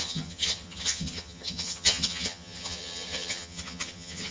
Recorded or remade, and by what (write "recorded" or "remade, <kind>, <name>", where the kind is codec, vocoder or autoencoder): remade, vocoder, HiFi-GAN